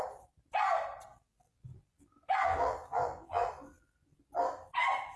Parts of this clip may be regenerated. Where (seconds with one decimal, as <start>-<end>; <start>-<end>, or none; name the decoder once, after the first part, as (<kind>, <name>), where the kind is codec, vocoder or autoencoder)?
1.1-4.2 (vocoder, BigVGAN v2)

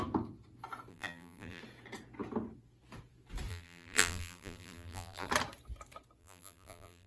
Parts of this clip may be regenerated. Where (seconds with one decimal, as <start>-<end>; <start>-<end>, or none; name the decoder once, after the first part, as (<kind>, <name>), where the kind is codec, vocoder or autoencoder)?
0.9-1.6 (vocoder, BigVGAN v2); 3.5-5.3; 6.2-7.1

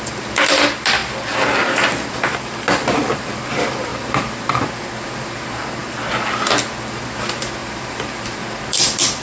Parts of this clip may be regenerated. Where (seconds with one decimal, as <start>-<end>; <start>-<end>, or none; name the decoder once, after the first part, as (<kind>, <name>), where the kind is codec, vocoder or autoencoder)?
0.0-5.8 (vocoder, BigVGAN v2); 6.9-9.2

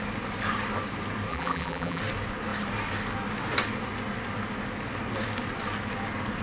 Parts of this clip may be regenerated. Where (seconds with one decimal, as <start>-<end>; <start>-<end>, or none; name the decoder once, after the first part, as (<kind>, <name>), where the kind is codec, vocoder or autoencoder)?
1.3-2.0 (vocoder, BigVGAN v2)

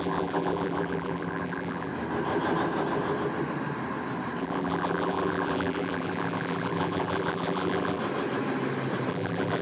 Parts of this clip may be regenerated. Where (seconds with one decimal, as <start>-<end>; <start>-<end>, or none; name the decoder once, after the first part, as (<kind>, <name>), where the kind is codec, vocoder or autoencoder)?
0.0-1.9 (vocoder, BigVGAN v2); 4.4-8.0; 9.1-9.6

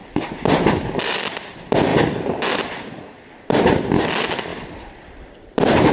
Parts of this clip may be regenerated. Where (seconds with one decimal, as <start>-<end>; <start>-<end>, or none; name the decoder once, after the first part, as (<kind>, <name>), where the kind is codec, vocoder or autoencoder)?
0.0-1.2 (vocoder, BigVGAN v2); 1.9-3.6; 4.5-5.9

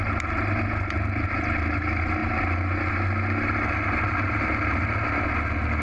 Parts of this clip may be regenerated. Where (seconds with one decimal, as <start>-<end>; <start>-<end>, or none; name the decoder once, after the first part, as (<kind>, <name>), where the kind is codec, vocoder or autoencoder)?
none

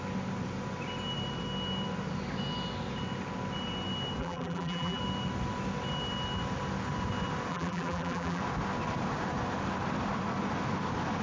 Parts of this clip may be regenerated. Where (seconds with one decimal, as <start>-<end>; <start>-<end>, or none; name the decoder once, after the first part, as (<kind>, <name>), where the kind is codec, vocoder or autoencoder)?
4.2-5.0 (vocoder, BigVGAN v2); 7.5-8.4